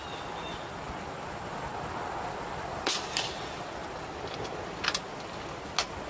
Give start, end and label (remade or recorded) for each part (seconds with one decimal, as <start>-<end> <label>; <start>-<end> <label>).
0.0-6.1 recorded